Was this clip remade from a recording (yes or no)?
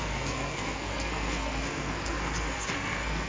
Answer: yes